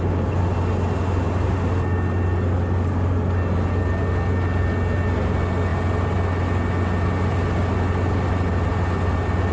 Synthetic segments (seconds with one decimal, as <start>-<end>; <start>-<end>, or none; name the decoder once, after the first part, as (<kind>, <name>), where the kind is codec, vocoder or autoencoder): none